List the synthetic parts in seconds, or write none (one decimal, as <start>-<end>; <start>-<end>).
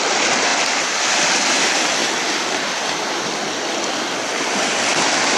none